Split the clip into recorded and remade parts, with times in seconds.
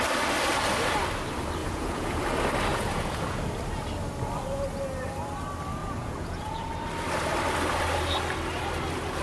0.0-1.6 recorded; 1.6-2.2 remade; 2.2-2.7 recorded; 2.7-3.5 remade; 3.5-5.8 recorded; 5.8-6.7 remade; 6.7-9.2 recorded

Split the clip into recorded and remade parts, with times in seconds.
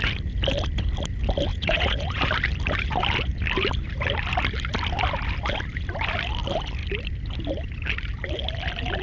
0.0-1.5 recorded; 1.5-2.2 remade; 2.2-9.0 recorded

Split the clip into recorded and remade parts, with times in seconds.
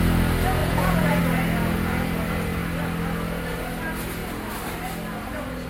0.0-0.6 recorded; 0.6-1.2 remade; 1.2-5.7 recorded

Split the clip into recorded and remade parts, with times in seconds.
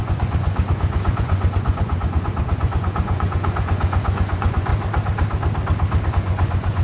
0.0-4.7 remade; 4.7-6.1 recorded; 6.1-6.8 remade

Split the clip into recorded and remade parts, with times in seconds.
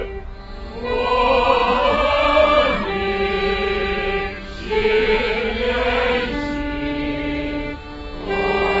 0.0-1.6 recorded; 1.6-2.2 remade; 2.2-4.7 recorded; 4.7-5.4 remade; 5.4-8.8 recorded